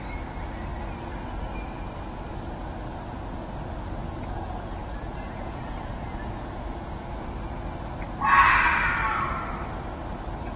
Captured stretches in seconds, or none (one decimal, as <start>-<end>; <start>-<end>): 0.0-4.0; 6.9-10.6